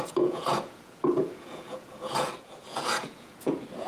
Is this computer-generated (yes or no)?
yes